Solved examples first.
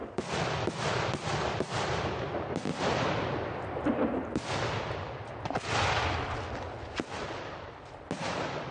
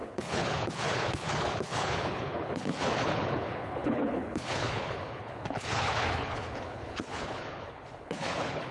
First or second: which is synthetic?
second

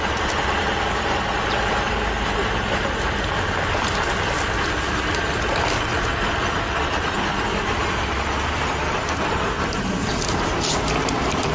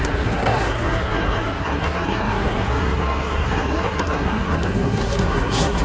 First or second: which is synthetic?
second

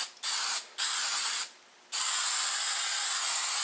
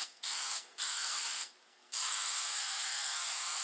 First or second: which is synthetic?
second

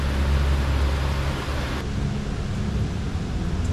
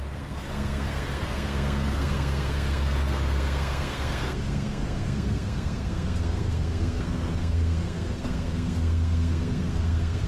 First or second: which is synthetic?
second